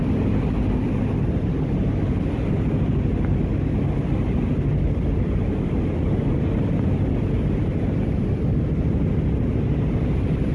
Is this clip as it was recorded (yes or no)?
yes